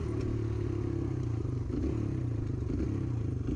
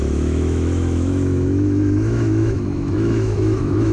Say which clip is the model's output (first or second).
second